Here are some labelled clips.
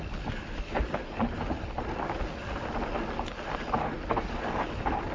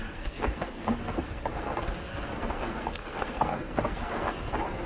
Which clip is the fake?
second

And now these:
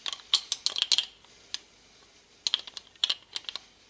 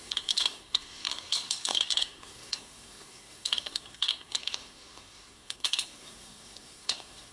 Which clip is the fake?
second